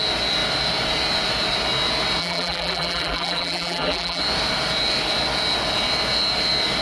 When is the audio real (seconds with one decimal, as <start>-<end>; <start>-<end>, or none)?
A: 0.0-2.2; 4.2-6.8